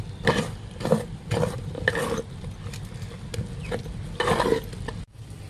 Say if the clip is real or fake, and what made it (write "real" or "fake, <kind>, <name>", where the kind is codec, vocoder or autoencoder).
real